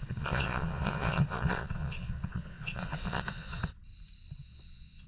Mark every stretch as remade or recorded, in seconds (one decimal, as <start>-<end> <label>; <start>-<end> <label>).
0.0-3.6 remade; 3.6-4.4 recorded; 4.4-5.1 remade

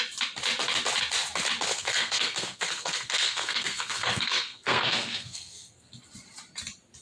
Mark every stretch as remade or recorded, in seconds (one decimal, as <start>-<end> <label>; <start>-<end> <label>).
0.0-1.7 recorded; 1.7-5.9 remade; 5.9-7.0 recorded

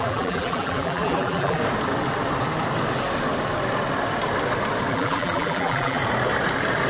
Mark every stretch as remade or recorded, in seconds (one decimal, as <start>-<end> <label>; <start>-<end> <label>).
0.0-1.6 remade; 1.6-4.9 recorded; 4.9-6.0 remade; 6.0-6.9 recorded

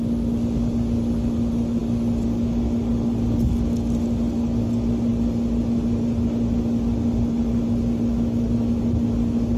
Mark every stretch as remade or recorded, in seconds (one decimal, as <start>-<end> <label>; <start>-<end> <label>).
0.0-9.6 recorded